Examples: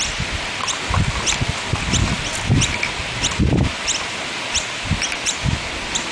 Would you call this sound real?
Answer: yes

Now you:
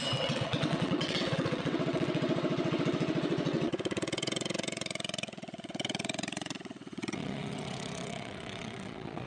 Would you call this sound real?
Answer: no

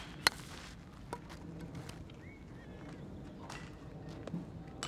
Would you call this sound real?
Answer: yes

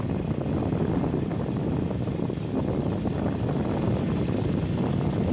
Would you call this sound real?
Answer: yes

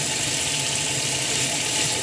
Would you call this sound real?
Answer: yes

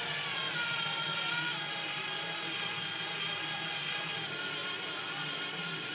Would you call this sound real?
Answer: yes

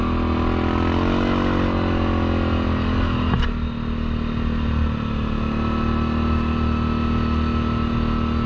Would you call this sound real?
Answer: yes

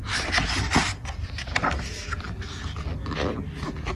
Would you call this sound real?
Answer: yes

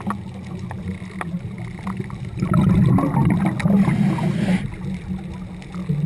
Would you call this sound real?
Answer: yes